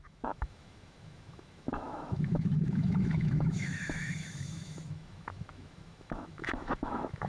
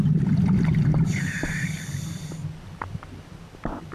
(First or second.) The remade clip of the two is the first